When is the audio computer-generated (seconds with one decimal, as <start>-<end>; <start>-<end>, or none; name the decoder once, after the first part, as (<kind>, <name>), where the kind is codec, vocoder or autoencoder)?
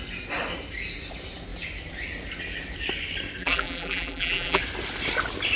3.4-4.6 (vocoder, BigVGAN v2)